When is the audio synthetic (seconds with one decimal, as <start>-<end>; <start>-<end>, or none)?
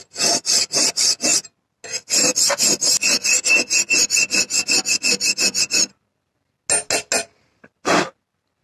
none